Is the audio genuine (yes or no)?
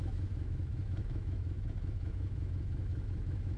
no